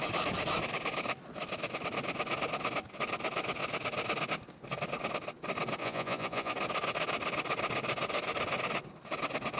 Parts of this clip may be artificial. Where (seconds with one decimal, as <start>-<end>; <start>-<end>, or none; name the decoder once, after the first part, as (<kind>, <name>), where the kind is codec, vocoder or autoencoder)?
5.8-6.5 (vocoder, Vocos)